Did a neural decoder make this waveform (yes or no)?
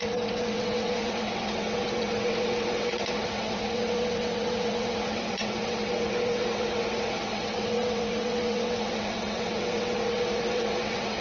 yes